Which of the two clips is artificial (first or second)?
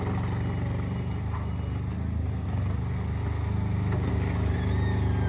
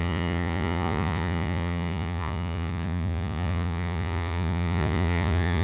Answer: second